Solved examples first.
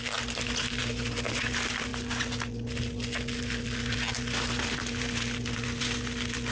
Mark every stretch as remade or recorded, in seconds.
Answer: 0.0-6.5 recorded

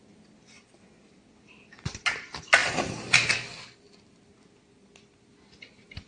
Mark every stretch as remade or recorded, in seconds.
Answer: 0.0-6.1 recorded

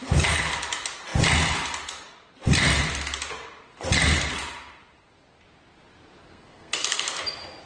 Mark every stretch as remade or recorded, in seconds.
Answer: 0.0-6.2 recorded; 6.2-7.2 remade; 7.2-7.7 recorded